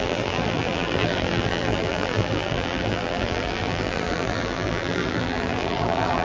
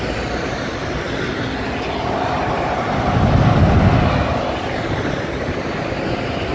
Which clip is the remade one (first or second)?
first